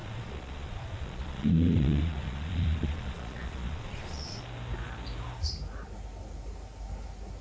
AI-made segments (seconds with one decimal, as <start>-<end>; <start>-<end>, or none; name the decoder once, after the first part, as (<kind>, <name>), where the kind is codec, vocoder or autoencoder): 0.0-4.4 (vocoder, Vocos)